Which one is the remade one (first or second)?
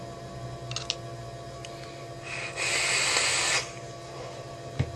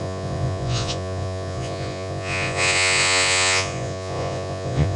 second